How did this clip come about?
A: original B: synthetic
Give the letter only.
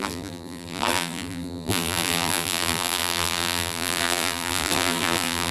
B